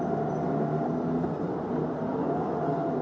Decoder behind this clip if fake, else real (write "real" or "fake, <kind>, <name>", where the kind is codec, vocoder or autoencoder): real